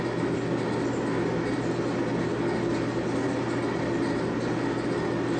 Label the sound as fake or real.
real